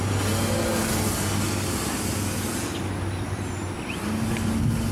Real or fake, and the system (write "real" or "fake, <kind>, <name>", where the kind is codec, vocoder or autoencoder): real